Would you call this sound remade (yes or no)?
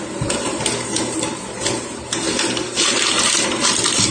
no